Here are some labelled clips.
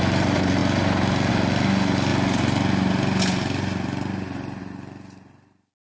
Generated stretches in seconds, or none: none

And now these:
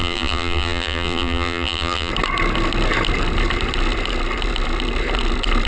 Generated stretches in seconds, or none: 0.0-2.1

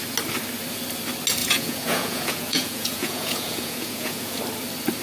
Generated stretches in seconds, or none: 1.4-4.4

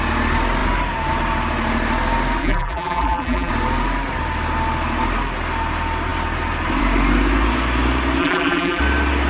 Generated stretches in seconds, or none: 2.4-3.5; 8.2-8.8

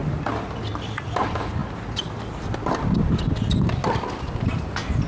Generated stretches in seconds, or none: none